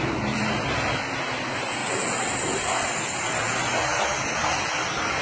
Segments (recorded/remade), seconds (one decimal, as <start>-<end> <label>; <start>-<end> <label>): 0.0-5.2 recorded